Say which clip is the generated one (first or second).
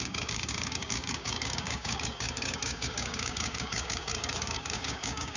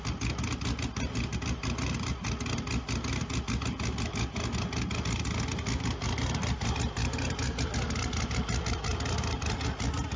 first